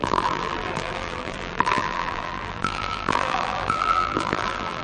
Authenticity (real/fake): fake